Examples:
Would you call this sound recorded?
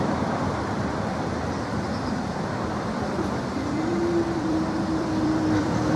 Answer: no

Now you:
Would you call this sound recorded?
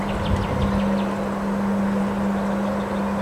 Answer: yes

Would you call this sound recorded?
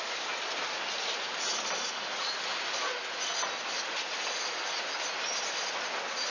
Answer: yes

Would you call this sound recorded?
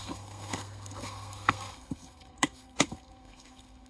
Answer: no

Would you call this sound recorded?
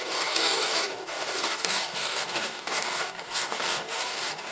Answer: no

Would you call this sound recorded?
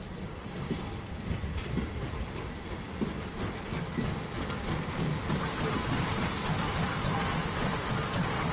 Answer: no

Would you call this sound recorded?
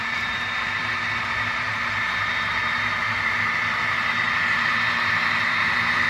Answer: no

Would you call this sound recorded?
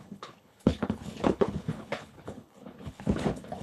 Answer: no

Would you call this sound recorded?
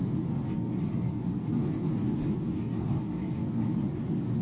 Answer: yes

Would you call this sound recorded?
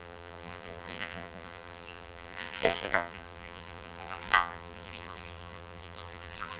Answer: no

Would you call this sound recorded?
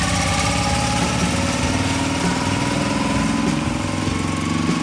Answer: yes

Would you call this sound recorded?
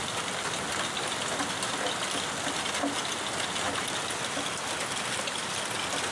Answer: yes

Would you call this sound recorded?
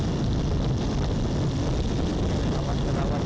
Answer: yes